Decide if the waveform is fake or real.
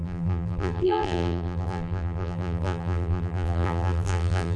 fake